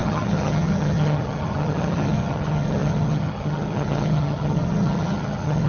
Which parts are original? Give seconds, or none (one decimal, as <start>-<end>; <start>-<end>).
none